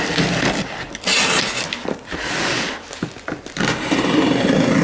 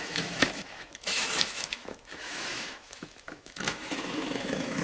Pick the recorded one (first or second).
first